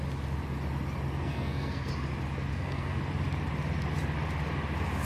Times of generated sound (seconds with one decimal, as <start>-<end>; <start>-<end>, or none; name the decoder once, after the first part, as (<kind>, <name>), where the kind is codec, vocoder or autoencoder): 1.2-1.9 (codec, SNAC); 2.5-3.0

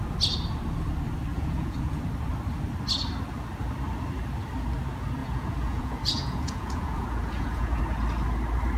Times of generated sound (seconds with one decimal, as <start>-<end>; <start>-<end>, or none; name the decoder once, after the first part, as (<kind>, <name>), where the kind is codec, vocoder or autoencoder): 1.3-2.0 (vocoder, Vocos); 5.2-7.8

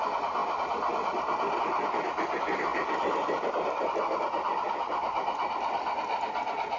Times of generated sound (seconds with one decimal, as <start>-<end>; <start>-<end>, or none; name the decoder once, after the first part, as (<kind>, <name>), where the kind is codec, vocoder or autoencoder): none